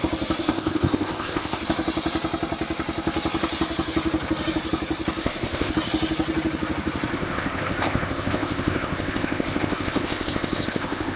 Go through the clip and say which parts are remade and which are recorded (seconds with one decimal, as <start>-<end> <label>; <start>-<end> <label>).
0.0-0.4 recorded; 0.4-1.6 remade; 1.6-5.2 recorded; 5.2-5.7 remade; 5.7-7.1 recorded; 7.1-11.2 remade